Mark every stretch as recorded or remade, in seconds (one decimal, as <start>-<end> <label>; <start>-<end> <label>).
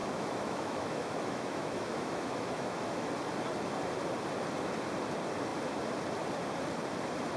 0.0-3.1 remade; 3.1-7.4 recorded